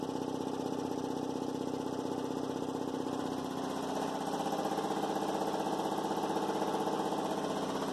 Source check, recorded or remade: recorded